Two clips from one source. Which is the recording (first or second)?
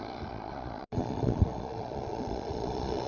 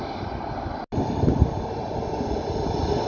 second